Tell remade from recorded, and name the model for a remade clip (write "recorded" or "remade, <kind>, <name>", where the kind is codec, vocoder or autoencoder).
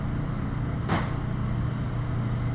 recorded